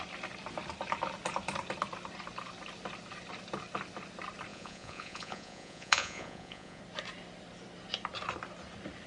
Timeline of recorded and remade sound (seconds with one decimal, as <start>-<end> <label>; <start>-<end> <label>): 0.0-4.5 recorded; 4.5-6.8 remade; 6.8-9.1 recorded